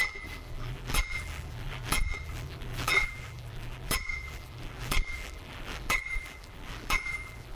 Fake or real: fake